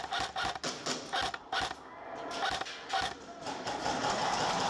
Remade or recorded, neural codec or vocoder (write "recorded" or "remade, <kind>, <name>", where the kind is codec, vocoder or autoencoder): recorded